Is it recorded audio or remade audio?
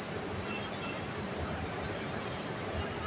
remade